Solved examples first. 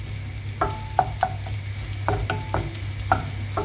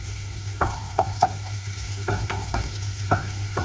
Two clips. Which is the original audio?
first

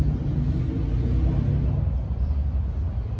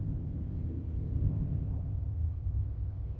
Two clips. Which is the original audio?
first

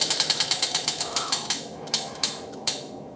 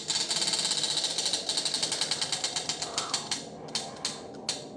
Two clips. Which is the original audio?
second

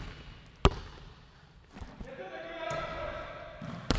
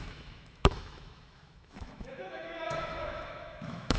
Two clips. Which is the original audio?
first